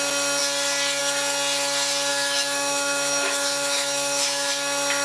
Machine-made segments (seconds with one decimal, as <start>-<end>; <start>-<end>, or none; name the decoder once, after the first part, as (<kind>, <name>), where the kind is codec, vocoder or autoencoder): 2.1-4.5 (autoencoder, DAC-VAE)